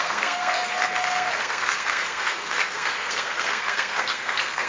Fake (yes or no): yes